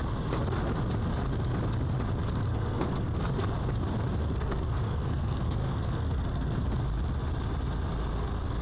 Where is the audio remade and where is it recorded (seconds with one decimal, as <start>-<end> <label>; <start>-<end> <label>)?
0.0-2.5 recorded; 2.5-3.2 remade; 3.2-4.2 recorded; 4.2-6.8 remade; 6.8-8.6 recorded